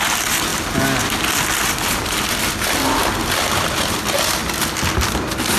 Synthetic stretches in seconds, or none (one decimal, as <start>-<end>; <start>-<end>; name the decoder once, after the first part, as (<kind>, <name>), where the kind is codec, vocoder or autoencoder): none

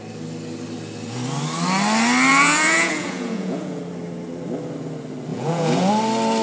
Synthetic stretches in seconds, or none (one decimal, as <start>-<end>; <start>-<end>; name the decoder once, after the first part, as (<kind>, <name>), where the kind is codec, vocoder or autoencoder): 2.3-3.8 (vocoder, Vocos); 5.3-5.9